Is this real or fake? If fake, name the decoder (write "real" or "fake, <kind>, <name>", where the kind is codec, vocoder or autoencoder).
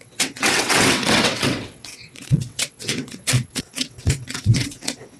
fake, vocoder, WaveNeXt